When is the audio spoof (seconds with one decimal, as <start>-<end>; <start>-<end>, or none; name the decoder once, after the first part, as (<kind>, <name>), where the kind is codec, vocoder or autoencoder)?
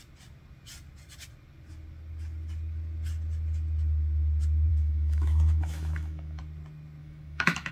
4.7-6.4 (autoencoder, DAC-VAE); 7.0-7.7